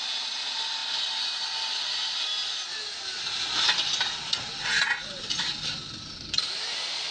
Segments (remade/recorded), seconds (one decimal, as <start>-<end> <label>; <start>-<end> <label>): 0.0-7.1 recorded